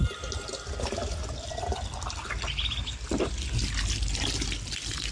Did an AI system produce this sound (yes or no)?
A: no